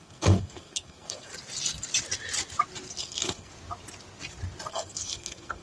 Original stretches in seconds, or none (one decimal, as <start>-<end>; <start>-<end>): 1.3-3.0; 3.5-4.7